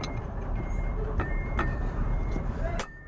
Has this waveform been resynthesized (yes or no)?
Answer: yes